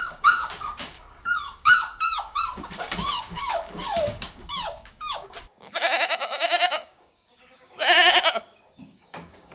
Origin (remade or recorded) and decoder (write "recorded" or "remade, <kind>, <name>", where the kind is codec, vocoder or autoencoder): remade, codec, DAC